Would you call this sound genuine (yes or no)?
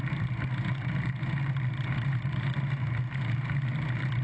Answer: yes